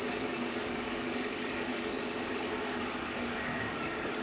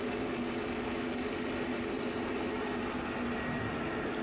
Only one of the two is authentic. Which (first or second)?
second